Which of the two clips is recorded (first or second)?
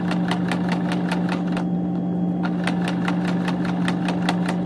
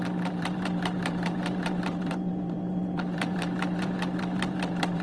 first